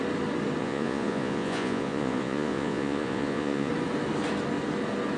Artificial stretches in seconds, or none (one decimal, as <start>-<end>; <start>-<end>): 0.6-3.7